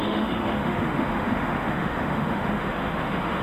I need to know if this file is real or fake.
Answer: fake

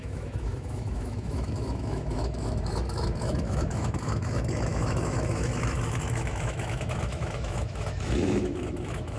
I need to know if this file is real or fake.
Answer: fake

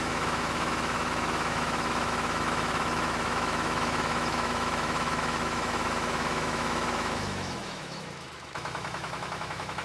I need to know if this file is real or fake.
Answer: fake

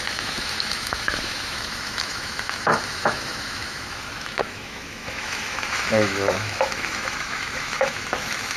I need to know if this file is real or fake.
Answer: fake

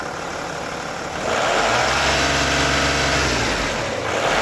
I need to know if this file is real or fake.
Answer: real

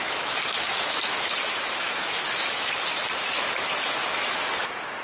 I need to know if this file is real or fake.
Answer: fake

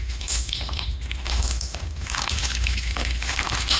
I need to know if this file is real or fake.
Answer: fake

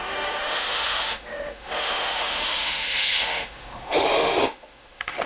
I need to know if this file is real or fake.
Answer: fake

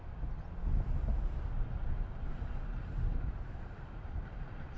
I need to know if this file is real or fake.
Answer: real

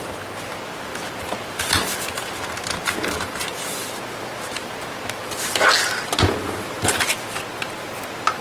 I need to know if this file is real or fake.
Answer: real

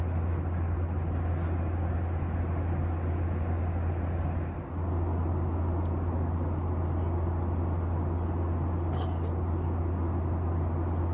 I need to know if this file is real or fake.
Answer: real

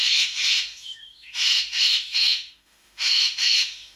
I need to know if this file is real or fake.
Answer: fake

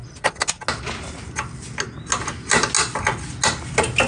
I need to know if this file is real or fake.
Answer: real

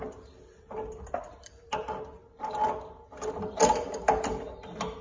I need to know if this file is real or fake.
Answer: real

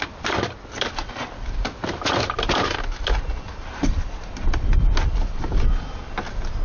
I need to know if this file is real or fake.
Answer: real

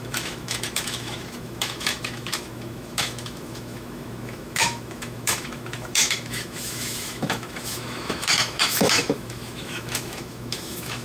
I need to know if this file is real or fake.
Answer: fake